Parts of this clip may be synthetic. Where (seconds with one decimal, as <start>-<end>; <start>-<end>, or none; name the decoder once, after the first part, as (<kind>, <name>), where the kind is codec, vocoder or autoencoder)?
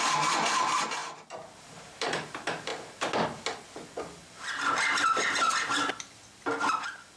0.0-2.7 (vocoder, BigVGAN v2)